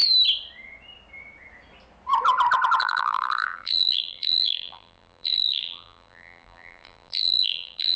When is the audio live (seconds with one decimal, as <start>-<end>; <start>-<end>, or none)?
0.0-2.8